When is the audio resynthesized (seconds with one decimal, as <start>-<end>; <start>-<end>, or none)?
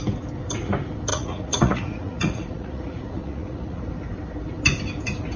1.1-3.8